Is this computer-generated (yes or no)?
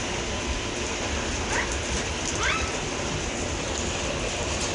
no